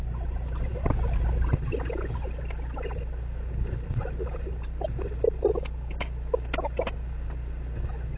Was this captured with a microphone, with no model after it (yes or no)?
yes